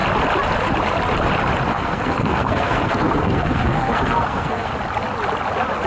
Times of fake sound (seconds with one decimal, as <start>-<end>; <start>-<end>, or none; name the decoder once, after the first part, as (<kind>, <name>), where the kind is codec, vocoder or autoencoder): 1.7-4.7 (codec, SNAC)